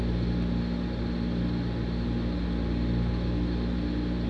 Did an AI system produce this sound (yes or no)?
no